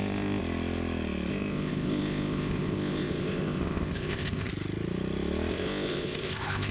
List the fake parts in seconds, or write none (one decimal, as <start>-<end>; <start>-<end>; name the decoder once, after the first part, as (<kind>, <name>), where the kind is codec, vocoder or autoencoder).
0.0-0.4 (codec, ZipCodec); 1.3-4.5; 5.5-6.7

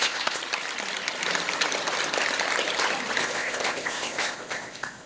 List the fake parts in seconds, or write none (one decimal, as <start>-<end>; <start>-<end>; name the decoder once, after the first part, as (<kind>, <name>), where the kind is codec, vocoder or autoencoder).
0.0-0.4 (codec, ZipCodec); 3.2-5.1

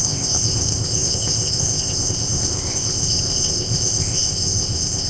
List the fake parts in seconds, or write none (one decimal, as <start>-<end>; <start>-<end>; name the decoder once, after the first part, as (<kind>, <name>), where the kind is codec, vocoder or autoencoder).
0.0-5.1 (codec, ZipCodec)

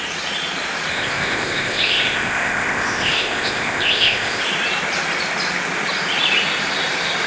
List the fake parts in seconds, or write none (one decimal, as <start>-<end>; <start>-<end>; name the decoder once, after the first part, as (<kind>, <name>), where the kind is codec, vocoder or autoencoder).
0.9-4.4 (codec, ZipCodec)

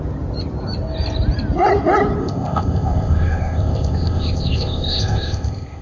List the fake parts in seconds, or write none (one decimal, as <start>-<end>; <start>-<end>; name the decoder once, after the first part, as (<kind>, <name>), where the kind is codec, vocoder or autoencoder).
2.2-5.8 (codec, ZipCodec)

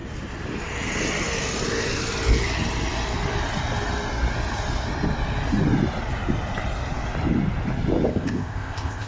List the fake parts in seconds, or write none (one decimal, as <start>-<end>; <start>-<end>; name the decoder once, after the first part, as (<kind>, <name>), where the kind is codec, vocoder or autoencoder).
8.1-9.1 (codec, ZipCodec)

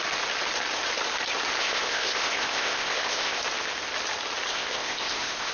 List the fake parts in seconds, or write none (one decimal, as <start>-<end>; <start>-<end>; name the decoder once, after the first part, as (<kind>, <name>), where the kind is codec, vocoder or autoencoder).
1.6-3.4 (codec, ZipCodec); 4.5-5.5